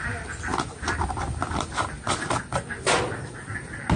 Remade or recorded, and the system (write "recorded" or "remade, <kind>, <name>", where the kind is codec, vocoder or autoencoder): recorded